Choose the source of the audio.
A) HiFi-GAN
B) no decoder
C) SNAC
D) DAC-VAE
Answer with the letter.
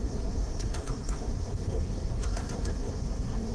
C